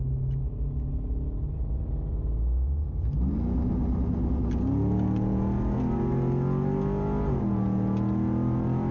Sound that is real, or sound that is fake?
real